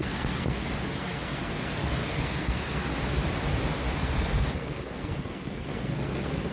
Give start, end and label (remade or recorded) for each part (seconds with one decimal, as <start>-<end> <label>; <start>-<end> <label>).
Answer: 0.0-2.9 remade; 2.9-3.9 recorded; 3.9-6.5 remade